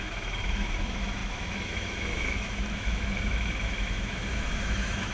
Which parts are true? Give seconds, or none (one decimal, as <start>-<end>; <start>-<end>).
none